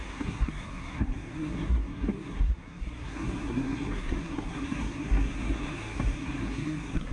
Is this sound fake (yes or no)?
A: yes